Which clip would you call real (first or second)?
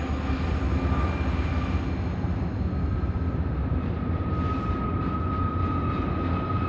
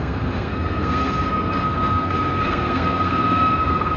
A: first